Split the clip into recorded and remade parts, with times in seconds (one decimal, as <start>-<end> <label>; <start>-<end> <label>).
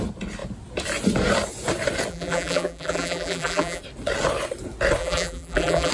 0.0-2.1 recorded; 2.1-3.8 remade; 3.8-5.0 recorded; 5.0-5.9 remade